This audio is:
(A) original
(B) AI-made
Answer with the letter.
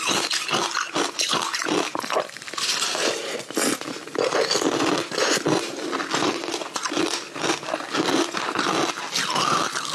A